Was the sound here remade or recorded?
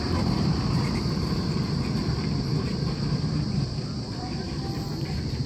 remade